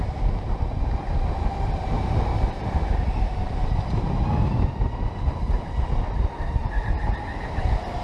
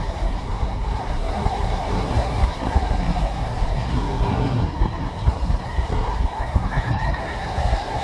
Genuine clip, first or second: first